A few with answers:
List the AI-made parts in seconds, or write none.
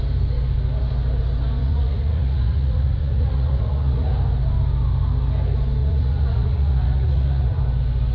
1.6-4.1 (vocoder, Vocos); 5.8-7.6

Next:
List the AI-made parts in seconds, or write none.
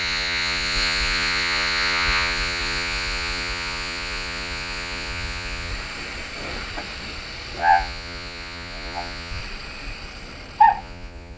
0.0-5.7 (vocoder, Vocos); 7.6-9.4; 10.8-11.4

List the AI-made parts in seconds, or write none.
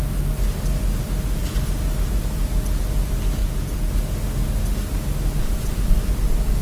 3.4-3.9 (vocoder, Vocos)